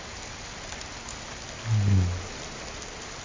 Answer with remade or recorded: recorded